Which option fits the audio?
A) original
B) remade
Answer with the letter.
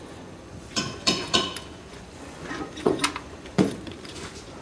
B